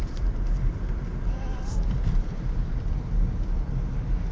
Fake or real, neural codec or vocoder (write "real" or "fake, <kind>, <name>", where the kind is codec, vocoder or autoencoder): fake, vocoder, BigVGAN v2